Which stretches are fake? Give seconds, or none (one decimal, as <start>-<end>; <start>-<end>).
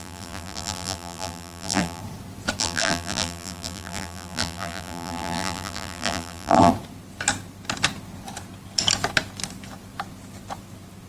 0.0-2.0; 2.6-6.7